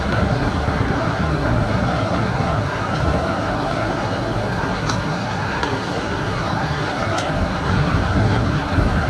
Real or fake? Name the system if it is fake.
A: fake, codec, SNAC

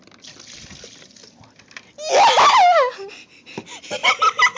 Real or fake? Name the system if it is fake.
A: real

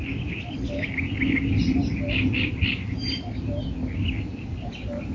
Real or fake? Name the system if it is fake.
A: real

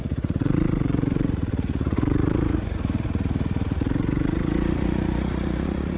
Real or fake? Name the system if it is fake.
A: fake, vocoder, Vocos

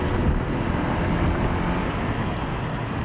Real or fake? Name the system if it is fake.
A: real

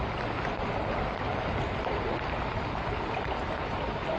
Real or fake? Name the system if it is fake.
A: real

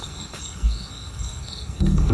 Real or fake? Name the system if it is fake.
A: fake, codec, SNAC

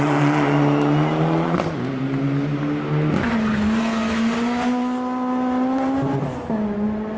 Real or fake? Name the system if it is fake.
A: real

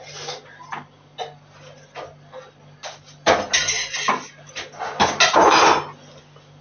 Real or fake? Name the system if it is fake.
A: real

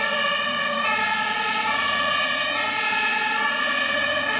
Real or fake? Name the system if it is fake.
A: fake, vocoder, Vocos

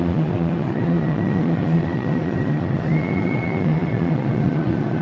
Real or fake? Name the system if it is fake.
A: fake, vocoder, Vocos